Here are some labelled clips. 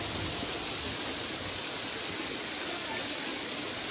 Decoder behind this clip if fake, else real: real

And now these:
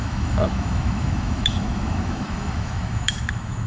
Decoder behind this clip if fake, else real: fake, autoencoder, DAC-VAE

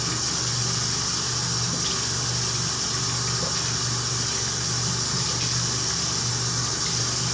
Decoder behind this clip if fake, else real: real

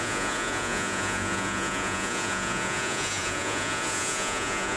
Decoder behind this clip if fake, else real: fake, vocoder, Vocos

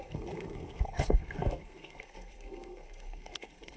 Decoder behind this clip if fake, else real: fake, codec, SNAC